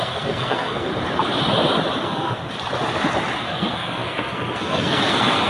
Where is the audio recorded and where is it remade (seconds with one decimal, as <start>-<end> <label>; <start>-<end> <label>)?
0.0-0.9 remade; 0.9-2.0 recorded; 2.0-2.4 remade; 2.4-3.4 recorded; 3.4-5.5 remade